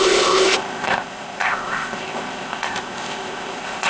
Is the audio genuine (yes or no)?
no